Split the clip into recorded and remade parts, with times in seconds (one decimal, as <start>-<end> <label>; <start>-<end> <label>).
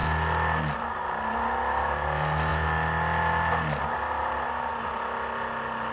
0.0-5.9 recorded